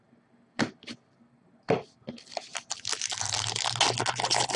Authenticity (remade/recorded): recorded